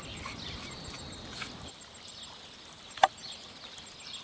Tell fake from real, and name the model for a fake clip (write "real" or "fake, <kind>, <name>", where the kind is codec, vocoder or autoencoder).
real